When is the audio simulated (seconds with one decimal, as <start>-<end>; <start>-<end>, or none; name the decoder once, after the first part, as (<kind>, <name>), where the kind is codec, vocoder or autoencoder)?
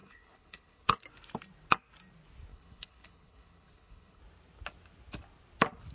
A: 0.0-1.0 (codec, HILCodec); 2.5-4.2